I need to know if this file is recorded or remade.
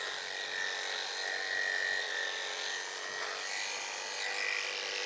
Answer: recorded